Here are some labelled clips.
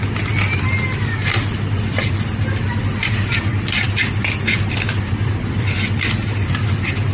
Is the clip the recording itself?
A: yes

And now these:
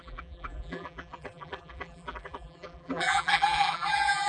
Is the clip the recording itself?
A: no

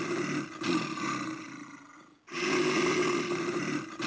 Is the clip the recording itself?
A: yes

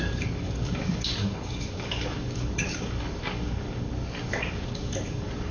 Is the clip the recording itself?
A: no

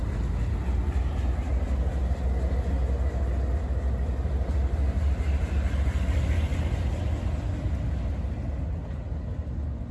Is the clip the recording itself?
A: yes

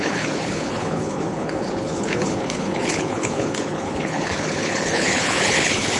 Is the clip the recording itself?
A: no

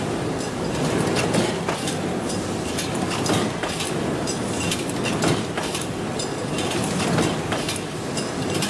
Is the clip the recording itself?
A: yes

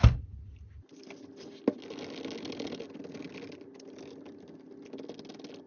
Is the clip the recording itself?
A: yes